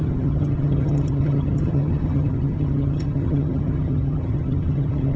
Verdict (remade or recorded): remade